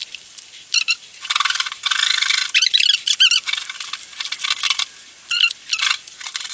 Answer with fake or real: real